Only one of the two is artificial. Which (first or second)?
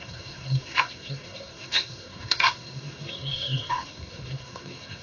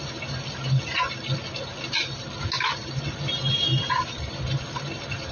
first